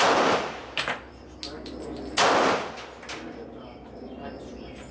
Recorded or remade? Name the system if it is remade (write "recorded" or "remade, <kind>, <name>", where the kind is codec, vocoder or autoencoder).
recorded